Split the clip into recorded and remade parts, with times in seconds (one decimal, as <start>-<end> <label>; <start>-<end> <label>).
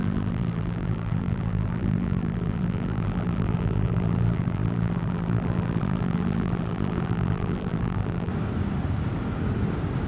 0.0-8.3 remade; 8.3-10.1 recorded